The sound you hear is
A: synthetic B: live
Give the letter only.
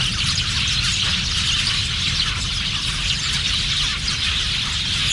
B